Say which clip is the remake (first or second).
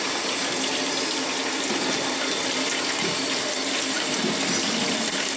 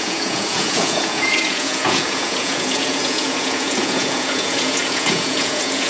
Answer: second